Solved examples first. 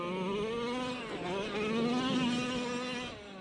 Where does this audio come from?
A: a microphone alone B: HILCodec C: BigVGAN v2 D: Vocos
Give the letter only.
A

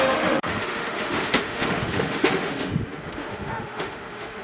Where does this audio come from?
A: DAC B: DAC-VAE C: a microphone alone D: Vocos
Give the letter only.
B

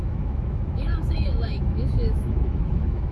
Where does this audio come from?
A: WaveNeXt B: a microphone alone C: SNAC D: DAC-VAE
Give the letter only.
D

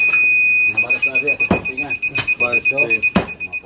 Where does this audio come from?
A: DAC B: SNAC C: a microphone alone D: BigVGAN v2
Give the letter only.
C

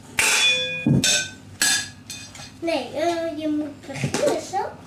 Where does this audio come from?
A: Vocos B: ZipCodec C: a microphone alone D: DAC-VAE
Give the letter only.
C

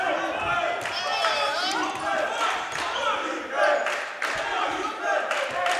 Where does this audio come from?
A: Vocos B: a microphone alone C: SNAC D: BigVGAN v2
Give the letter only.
B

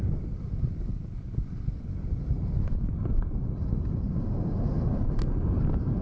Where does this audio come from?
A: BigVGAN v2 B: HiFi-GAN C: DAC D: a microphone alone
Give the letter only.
D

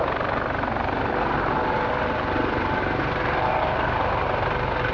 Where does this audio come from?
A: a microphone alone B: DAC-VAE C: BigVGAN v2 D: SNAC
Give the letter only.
A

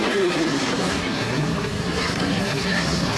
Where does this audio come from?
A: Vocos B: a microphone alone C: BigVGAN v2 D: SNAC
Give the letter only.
D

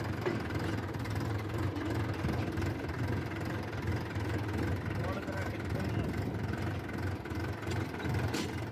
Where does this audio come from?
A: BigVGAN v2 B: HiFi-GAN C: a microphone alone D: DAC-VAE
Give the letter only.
A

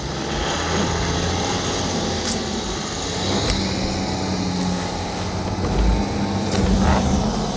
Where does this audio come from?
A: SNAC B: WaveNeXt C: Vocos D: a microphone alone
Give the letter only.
D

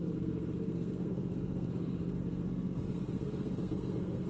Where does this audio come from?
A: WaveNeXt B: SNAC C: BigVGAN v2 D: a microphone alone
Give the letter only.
B